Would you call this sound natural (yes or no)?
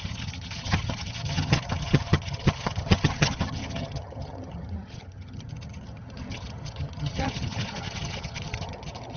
no